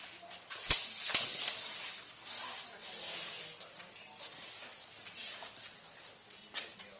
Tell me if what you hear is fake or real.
real